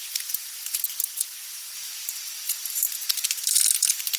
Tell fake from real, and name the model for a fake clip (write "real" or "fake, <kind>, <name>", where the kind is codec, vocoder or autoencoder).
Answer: real